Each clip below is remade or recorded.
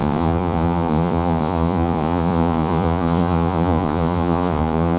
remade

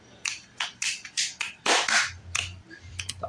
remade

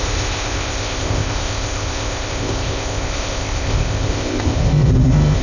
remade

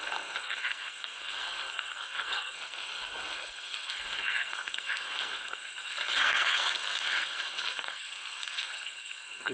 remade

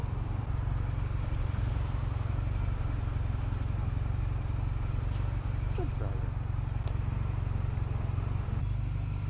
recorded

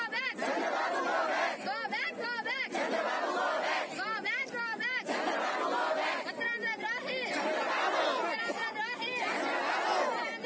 recorded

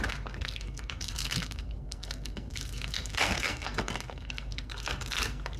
remade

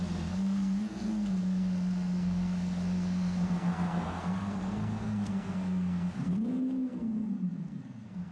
remade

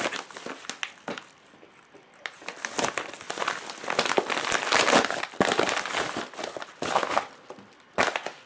recorded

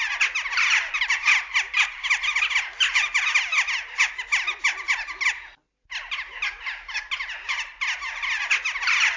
recorded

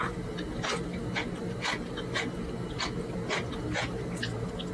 recorded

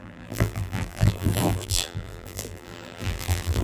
remade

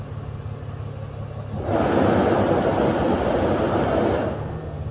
recorded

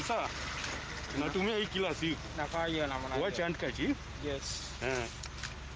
recorded